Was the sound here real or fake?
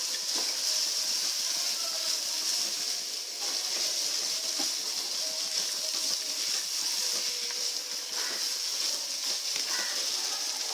real